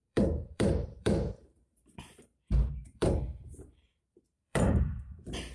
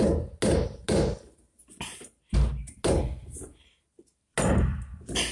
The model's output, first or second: first